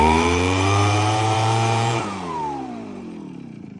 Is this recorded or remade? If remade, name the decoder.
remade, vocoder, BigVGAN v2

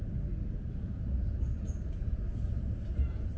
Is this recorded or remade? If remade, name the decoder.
recorded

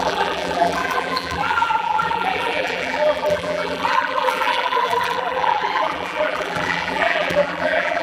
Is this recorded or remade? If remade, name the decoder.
remade, vocoder, BigVGAN v2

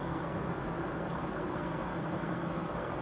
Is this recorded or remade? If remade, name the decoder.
remade, codec, SNAC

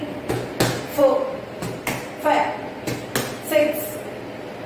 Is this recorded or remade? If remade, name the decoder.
recorded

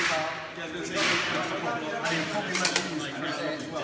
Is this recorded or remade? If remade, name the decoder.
recorded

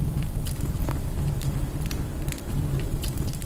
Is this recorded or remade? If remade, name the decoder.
remade, vocoder, BigVGAN v2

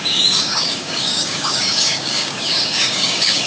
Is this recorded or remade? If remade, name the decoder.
remade, codec, DAC